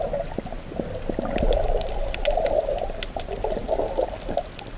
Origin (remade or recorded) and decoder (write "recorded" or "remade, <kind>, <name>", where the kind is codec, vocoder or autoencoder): recorded